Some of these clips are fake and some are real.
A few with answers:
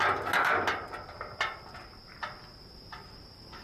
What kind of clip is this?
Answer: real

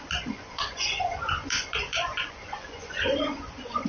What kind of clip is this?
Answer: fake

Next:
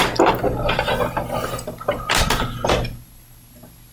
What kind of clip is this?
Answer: real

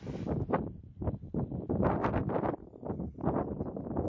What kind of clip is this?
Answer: real